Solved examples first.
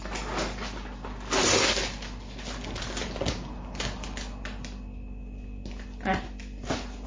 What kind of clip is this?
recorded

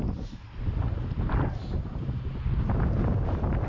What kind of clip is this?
recorded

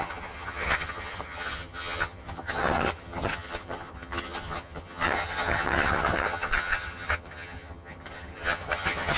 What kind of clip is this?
remade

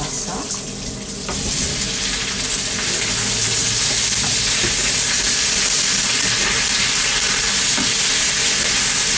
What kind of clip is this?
recorded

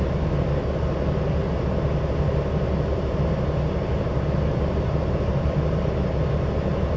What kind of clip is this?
recorded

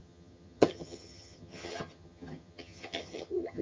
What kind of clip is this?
remade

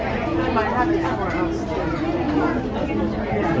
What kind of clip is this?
recorded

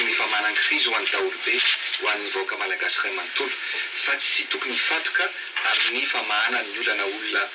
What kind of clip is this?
recorded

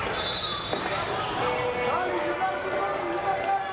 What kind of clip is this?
recorded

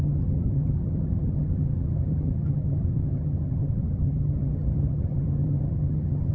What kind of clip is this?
remade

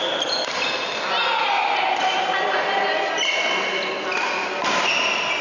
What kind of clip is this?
recorded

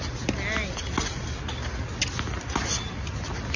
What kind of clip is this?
recorded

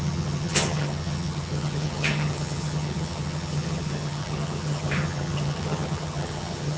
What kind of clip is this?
remade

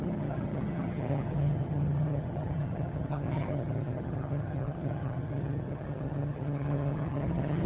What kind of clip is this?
remade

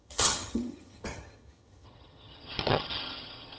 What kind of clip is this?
remade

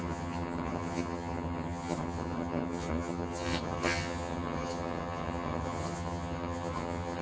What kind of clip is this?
remade